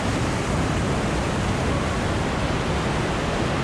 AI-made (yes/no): no